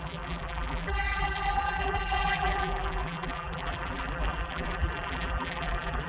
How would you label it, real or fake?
fake